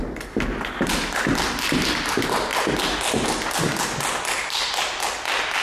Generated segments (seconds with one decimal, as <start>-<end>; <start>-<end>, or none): none